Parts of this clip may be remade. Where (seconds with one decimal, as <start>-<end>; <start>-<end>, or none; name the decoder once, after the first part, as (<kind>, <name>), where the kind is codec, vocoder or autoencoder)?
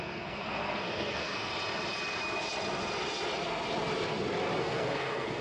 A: 0.0-1.5 (codec, SNAC); 4.6-5.4